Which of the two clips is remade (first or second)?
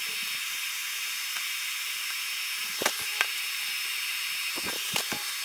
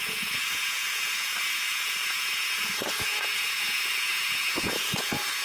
second